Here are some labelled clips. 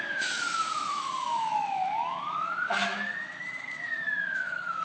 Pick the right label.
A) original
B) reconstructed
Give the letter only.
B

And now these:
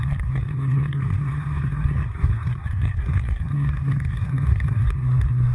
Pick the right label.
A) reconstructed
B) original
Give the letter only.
A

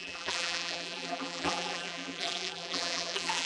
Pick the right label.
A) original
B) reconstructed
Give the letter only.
B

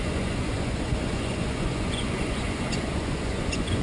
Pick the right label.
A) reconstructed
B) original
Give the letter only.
A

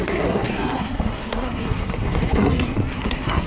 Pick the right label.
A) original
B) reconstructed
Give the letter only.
B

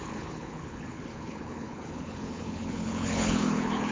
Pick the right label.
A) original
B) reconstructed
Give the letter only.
B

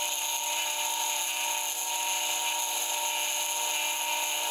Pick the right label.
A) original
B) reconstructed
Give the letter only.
A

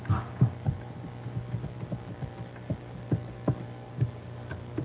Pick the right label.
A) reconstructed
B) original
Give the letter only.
B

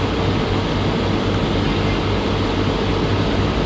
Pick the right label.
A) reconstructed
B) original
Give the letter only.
B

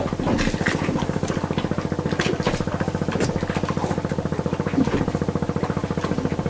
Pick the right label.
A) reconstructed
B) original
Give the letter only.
B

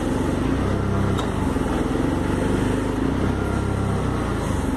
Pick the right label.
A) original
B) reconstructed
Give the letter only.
A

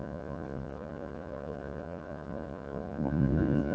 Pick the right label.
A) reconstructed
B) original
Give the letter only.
A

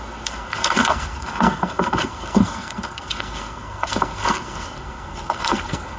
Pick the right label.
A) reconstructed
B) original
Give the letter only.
A